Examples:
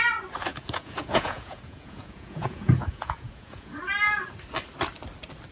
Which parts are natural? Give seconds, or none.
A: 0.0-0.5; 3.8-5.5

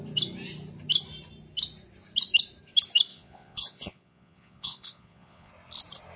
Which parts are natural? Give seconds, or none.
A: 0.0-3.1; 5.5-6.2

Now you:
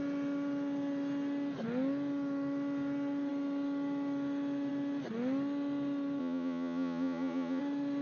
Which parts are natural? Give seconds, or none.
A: 0.0-6.2; 7.6-8.0

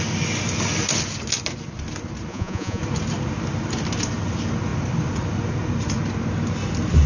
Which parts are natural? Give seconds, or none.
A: 0.0-2.3; 2.8-7.1